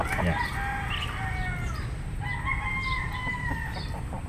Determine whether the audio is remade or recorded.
recorded